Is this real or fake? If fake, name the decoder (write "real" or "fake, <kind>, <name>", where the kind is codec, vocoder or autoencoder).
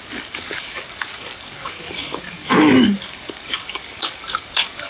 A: fake, codec, DAC